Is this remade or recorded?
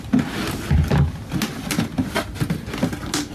recorded